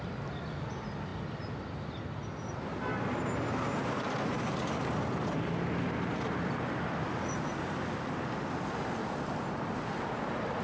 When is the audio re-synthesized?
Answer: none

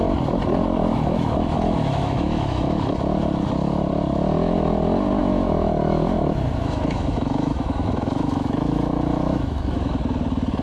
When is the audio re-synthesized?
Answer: 0.9-3.0 (autoencoder, DAC-VAE); 5.2-9.9